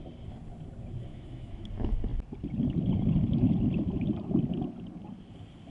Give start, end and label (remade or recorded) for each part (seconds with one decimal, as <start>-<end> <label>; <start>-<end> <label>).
0.0-1.1 recorded; 1.1-1.7 remade; 1.7-5.7 recorded